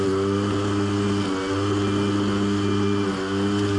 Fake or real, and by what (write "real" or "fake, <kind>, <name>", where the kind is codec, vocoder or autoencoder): real